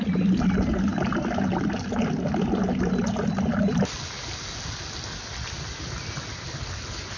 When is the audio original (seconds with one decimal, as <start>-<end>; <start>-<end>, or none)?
0.0-7.2

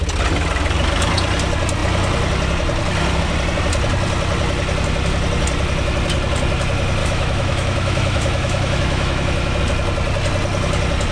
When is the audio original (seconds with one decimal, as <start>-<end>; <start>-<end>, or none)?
0.0-7.0; 9.6-11.1

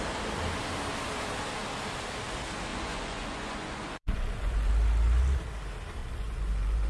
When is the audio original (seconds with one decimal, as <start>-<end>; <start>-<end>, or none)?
0.0-2.7; 4.7-6.0

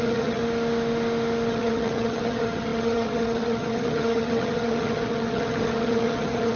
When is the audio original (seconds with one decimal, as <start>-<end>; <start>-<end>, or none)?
0.4-1.5

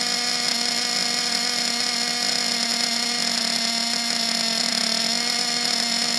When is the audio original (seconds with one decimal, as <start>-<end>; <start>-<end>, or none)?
0.0-6.2

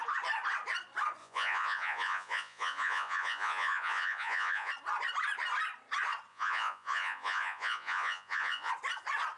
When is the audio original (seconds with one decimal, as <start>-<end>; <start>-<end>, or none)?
0.0-1.2; 4.7-6.3; 8.7-9.4

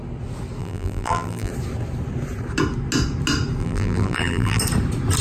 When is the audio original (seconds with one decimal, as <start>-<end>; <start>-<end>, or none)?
0.0-0.6; 1.5-3.6; 4.6-5.2

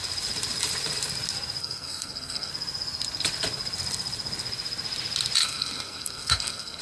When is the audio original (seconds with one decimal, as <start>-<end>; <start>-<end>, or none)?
0.0-1.6; 2.5-5.4